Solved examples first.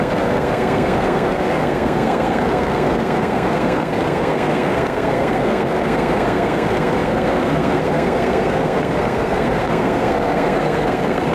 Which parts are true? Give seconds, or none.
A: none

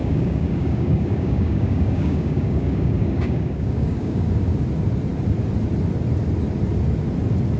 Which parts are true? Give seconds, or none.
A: 4.3-7.6

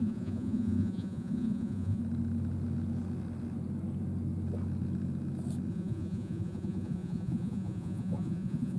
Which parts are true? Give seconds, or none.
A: 2.0-5.7

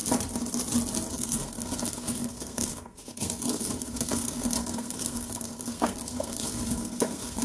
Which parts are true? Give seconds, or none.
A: 0.0-1.1

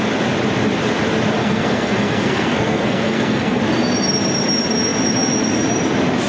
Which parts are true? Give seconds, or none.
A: 0.0-1.4; 3.6-6.3

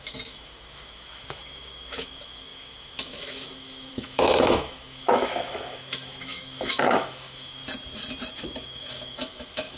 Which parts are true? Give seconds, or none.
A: 7.6-8.3

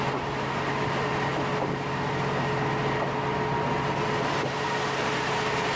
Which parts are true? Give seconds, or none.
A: 0.0-5.8

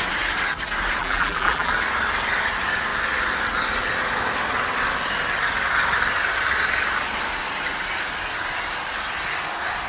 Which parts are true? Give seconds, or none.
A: 0.0-1.0; 1.7-9.9